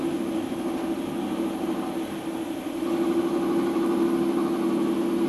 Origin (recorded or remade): recorded